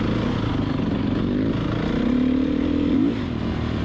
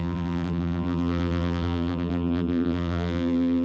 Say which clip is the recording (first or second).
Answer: first